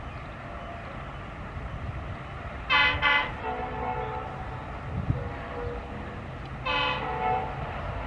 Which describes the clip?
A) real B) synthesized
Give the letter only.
A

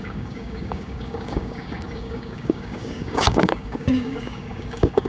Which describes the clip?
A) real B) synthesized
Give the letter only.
B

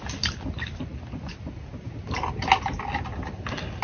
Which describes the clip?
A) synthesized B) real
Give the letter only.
B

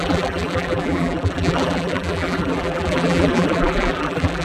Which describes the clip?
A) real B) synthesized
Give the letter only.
B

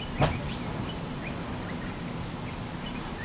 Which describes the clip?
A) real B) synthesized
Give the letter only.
A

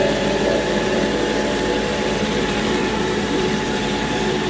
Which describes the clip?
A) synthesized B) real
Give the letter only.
A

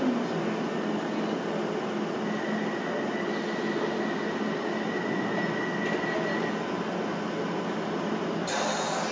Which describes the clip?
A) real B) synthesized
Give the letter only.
A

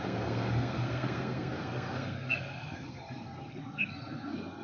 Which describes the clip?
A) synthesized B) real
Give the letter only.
A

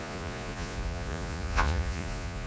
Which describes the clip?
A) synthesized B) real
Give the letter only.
A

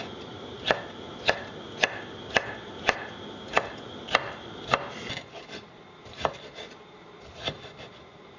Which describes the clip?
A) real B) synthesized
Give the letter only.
A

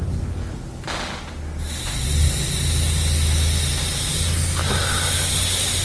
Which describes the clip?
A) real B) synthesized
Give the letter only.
A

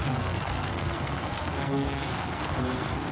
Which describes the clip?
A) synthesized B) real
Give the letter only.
A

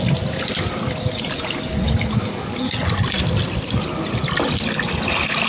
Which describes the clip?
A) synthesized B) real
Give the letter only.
B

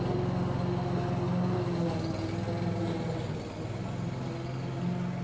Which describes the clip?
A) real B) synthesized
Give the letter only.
A